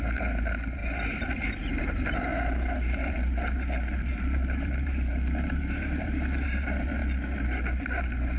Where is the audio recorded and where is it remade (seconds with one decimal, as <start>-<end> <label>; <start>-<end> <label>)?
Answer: 0.0-7.0 remade; 7.0-7.8 recorded; 7.8-8.4 remade